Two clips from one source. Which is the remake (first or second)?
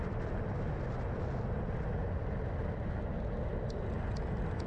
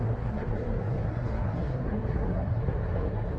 second